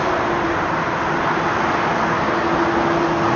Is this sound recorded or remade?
recorded